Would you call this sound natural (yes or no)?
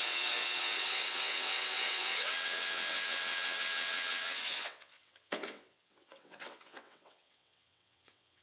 no